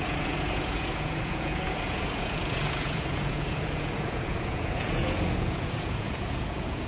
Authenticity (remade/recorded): remade